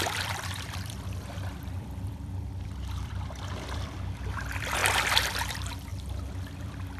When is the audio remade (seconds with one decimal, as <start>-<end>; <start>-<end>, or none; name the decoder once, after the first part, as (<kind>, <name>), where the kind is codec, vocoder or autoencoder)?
0.0-4.8 (vocoder, BigVGAN v2); 5.5-5.9; 6.6-7.0